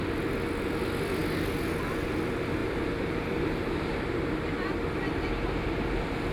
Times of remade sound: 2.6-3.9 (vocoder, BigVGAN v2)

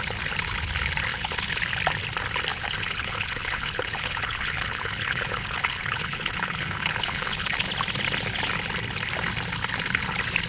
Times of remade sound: 1.1-1.6 (codec, HILCodec); 2.5-7.7

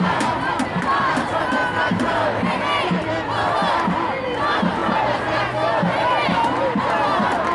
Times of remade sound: none

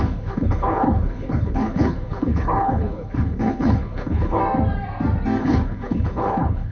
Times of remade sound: 0.0-4.4 (codec, HILCodec); 5.4-6.7

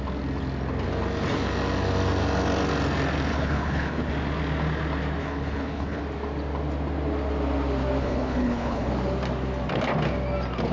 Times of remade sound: 3.3-4.1 (codec, HILCodec); 5.2-6.0; 8.0-8.9

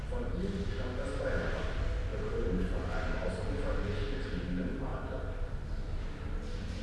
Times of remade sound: none

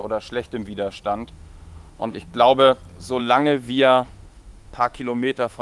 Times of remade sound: 1.3-2.3 (autoencoder, DAC-VAE); 3.2-5.6